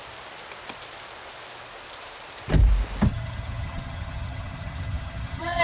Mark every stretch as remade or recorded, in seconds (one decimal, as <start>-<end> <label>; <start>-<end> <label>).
0.0-3.1 recorded; 3.1-5.6 remade